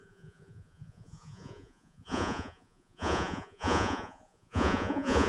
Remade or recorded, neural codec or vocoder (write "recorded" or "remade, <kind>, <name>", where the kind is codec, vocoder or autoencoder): remade, vocoder, Vocos